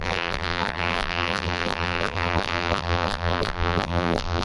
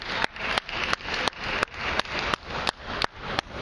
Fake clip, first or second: first